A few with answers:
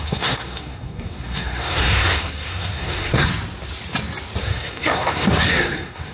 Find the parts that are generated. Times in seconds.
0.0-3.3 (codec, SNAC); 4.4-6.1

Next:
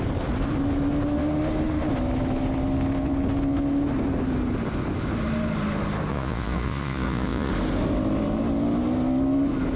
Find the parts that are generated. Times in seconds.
6.1-7.5 (vocoder, Vocos)

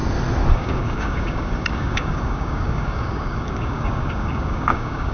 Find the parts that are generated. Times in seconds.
0.5-5.1 (codec, DAC)

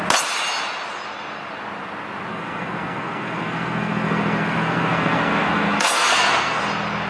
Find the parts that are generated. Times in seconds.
2.3-6.6 (codec, SNAC)

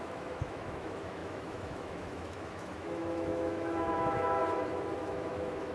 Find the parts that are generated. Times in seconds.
0.0-4.4 (autoencoder, DAC-VAE); 5.0-5.7

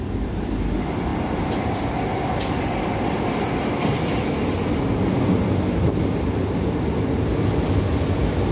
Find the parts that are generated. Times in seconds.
none